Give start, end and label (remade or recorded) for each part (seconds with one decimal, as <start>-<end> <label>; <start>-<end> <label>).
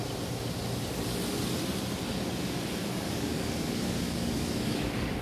0.0-2.8 recorded; 2.8-5.2 remade